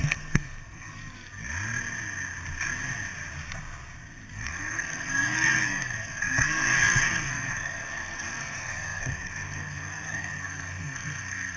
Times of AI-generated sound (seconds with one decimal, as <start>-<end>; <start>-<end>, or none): 0.0-1.0; 4.3-11.6